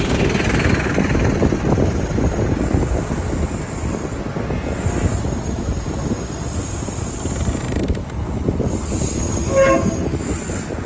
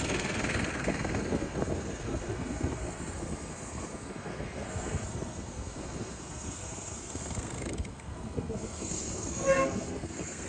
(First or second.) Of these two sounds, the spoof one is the second